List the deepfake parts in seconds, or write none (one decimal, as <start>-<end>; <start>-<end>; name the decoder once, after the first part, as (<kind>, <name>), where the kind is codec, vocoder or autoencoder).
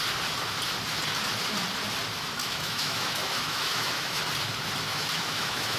2.4-4.2 (autoencoder, DAC-VAE); 4.9-5.8